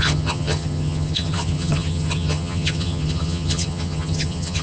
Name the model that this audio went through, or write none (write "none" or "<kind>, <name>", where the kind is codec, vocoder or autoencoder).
vocoder, HiFi-GAN